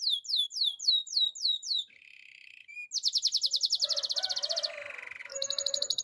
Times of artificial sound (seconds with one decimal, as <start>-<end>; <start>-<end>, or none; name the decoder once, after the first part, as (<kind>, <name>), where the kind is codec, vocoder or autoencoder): 5.2-6.0 (vocoder, BigVGAN v2)